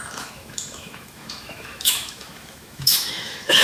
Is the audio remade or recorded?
remade